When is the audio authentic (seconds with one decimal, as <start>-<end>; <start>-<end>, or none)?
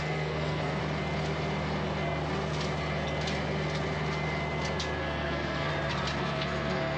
0.8-5.0; 5.7-6.2